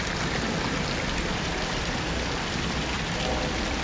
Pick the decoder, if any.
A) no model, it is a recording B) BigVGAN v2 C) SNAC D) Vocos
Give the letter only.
A